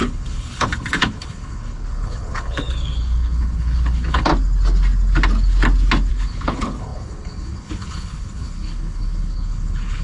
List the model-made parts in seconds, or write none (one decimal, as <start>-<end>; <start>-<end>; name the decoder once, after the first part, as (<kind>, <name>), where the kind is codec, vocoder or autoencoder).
0.0-4.3 (codec, HILCodec); 6.1-10.0

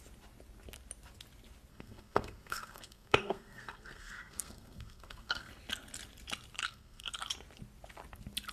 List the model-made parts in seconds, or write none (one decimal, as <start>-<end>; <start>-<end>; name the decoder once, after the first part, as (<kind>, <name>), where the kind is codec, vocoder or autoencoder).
1.7-5.5 (codec, SNAC); 6.6-7.1

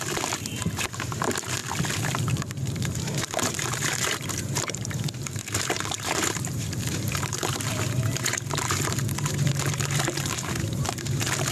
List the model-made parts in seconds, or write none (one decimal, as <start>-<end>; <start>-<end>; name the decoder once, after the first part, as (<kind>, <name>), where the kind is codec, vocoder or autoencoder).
0.0-1.6 (vocoder, BigVGAN v2); 2.2-11.5

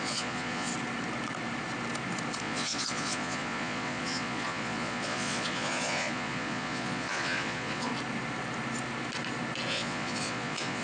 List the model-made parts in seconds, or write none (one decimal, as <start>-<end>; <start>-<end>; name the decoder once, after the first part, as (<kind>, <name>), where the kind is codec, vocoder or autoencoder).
0.0-0.7 (vocoder, Vocos); 2.4-7.9; 9.7-10.8

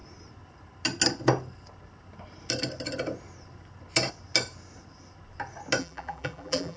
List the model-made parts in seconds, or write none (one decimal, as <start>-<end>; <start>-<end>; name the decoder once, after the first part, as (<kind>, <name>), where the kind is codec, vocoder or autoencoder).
5.8-6.8 (vocoder, BigVGAN v2)

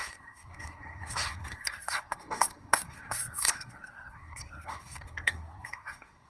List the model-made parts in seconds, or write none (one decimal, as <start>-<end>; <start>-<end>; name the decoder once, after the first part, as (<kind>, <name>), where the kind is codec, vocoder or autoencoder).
0.0-6.3 (codec, SNAC)

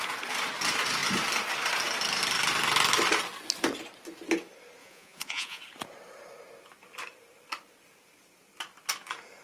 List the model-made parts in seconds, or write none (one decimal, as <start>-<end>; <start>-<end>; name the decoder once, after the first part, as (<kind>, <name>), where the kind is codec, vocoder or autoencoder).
4.8-5.6 (vocoder, Vocos)